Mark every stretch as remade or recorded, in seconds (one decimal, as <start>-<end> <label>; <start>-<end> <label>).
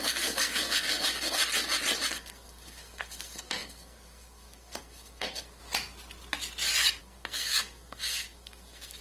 0.0-1.4 remade; 1.4-2.1 recorded; 2.1-5.6 remade; 5.6-7.0 recorded; 7.0-9.0 remade